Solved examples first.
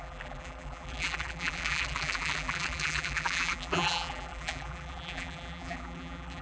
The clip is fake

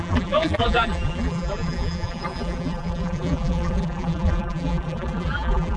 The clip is fake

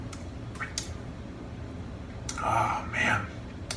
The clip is real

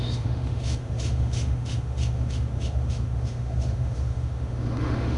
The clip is fake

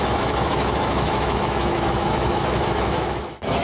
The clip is fake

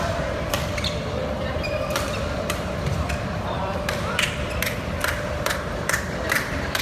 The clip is fake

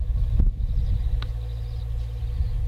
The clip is real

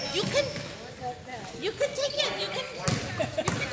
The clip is real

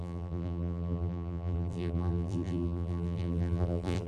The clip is fake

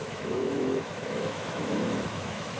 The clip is fake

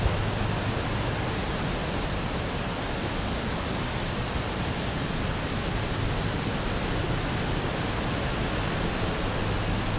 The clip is real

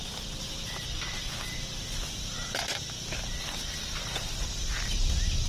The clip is real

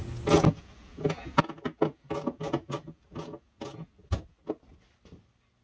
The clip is real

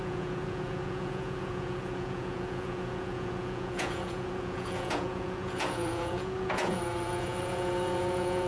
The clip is fake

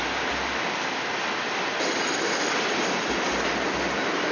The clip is real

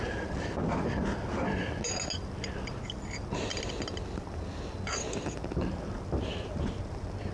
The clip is real